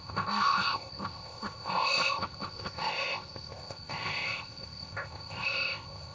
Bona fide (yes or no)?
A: no